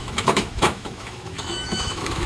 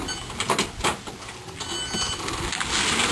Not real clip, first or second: first